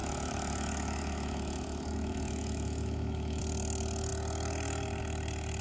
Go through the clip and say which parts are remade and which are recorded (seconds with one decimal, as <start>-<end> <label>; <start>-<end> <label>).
0.0-3.4 remade; 3.4-5.6 recorded